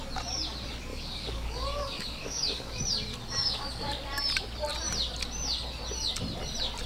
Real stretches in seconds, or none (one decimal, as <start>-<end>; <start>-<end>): 0.0-0.9; 2.8-3.4; 4.1-6.9